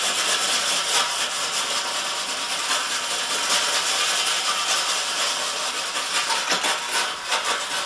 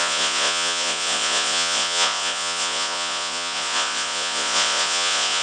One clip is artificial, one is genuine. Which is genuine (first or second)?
first